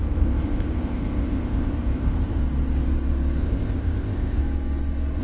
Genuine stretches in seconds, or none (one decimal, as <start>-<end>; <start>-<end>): 2.4-3.4; 4.4-5.2